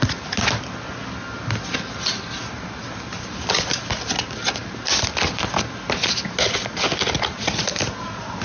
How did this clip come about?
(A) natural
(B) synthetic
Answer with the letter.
A